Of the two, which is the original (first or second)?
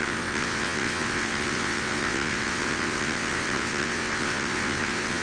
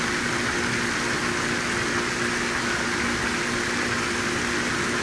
second